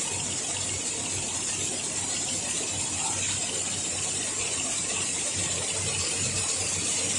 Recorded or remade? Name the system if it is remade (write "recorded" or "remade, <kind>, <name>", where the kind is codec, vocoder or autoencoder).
recorded